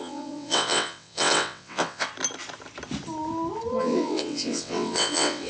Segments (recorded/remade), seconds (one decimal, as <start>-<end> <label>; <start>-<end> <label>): 0.0-2.1 remade; 2.1-3.8 recorded; 3.8-5.5 remade